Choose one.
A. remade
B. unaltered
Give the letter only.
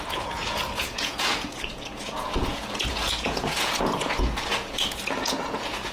A